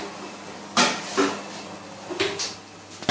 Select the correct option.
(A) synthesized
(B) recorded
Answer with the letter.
B